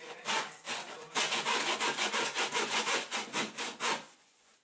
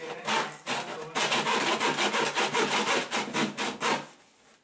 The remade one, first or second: first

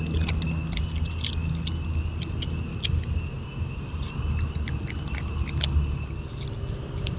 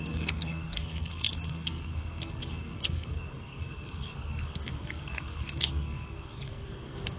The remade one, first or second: second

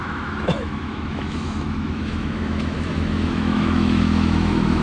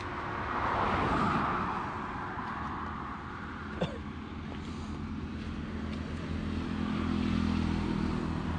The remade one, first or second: first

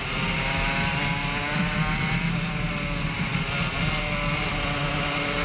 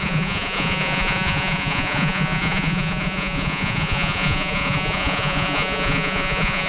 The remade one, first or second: second